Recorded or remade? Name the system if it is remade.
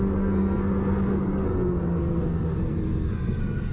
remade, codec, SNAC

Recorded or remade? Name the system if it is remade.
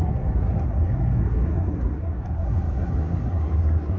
remade, codec, SNAC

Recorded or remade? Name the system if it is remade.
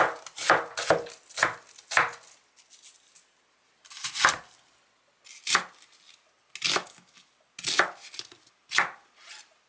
recorded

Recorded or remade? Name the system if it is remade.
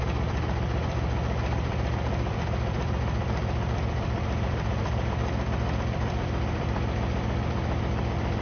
remade, vocoder, BigVGAN v2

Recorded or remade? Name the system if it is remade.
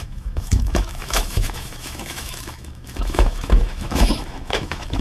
remade, autoencoder, DAC-VAE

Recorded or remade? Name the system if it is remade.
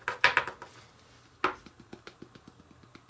recorded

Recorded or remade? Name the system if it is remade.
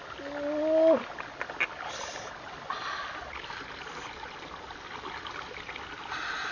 recorded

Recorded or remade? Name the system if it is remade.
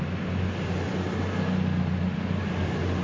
recorded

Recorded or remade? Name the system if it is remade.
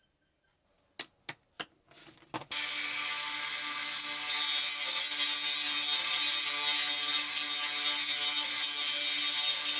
recorded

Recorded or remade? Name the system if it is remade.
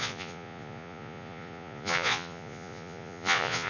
remade, vocoder, Vocos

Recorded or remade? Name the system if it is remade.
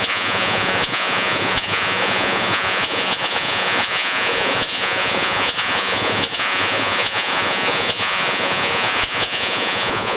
remade, vocoder, Vocos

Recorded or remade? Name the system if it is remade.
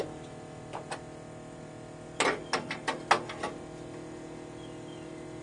recorded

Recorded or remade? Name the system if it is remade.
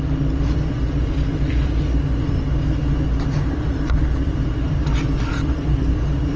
recorded